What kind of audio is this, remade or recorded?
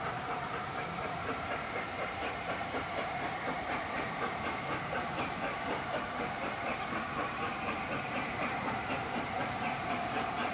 remade